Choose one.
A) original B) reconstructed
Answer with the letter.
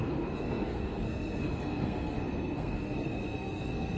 B